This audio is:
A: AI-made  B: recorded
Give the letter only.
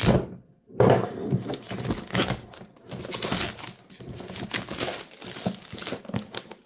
B